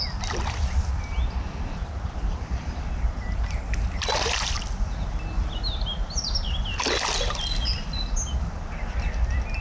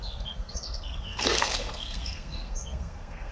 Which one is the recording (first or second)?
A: first